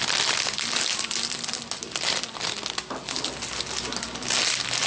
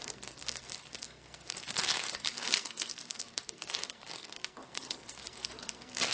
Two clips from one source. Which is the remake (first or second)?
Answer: second